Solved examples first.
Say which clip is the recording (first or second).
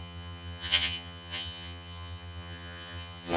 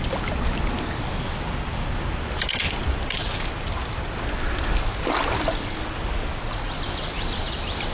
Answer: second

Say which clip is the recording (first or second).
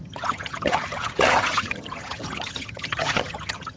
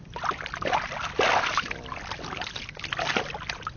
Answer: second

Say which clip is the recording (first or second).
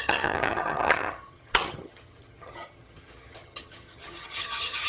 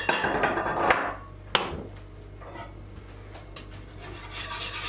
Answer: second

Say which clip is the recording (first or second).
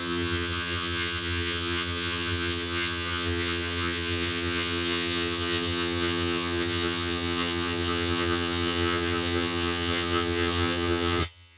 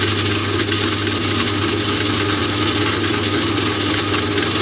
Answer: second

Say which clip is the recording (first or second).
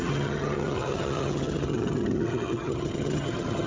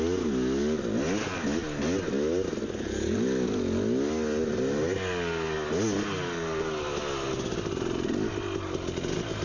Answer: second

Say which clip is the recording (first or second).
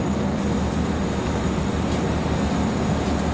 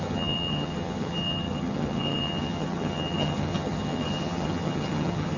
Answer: first